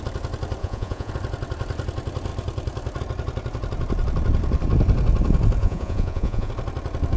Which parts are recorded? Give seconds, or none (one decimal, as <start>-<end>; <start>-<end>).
0.0-0.6; 1.1-5.6; 6.5-7.2